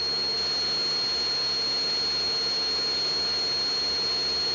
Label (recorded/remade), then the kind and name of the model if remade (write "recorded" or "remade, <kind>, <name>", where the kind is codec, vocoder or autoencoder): recorded